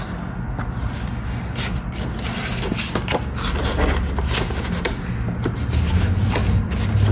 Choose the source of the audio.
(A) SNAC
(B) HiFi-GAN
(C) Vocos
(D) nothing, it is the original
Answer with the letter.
D